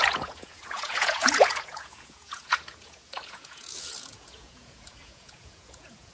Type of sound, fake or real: fake